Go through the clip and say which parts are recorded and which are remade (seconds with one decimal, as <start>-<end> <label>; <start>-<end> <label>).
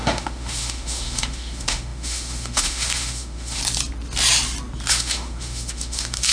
0.0-3.6 remade; 3.6-4.9 recorded; 4.9-6.3 remade